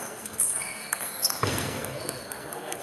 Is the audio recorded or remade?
remade